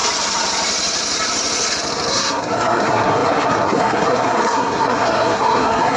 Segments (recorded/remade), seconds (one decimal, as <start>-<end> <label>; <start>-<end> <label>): 0.0-2.1 recorded; 2.1-6.0 remade

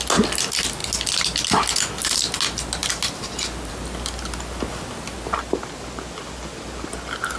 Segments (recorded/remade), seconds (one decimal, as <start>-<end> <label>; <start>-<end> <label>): 0.0-7.4 recorded

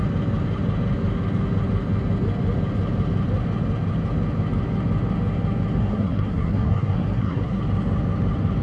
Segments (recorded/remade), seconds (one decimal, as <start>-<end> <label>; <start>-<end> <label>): 0.0-5.8 recorded; 5.8-7.6 remade; 7.6-8.6 recorded

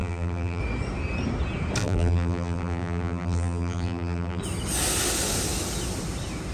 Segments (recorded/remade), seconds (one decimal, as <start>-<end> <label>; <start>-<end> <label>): 0.0-0.6 remade; 0.6-1.8 recorded; 1.8-4.4 remade; 4.4-6.5 recorded